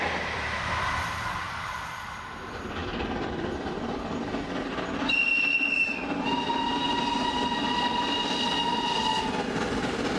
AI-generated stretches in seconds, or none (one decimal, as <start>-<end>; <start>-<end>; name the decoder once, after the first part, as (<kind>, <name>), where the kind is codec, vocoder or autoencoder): none